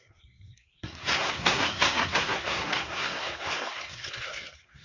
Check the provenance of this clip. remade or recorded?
remade